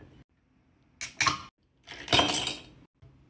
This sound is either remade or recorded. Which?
recorded